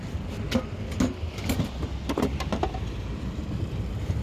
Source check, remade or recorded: recorded